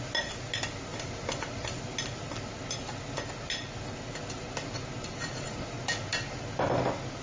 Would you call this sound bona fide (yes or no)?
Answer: yes